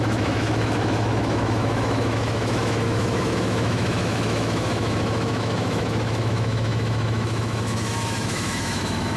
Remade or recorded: remade